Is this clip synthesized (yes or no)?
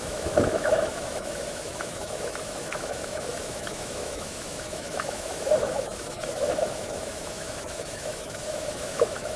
yes